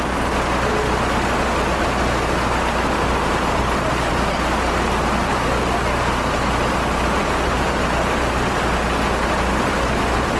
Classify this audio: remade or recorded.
recorded